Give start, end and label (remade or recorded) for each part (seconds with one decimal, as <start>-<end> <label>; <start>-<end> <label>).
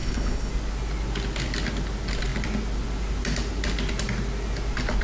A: 0.0-0.5 remade; 0.5-5.0 recorded